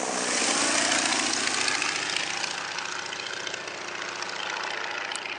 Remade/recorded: recorded